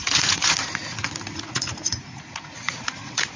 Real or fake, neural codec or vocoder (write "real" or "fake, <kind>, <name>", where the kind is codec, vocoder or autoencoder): fake, vocoder, Vocos